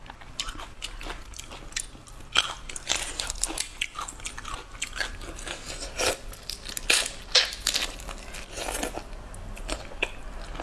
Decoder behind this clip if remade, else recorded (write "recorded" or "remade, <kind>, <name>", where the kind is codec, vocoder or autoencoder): recorded